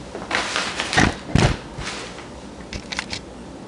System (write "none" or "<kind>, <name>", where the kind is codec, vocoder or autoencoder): none